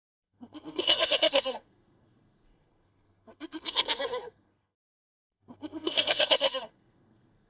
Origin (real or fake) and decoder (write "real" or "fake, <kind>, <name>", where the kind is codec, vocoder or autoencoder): fake, codec, SNAC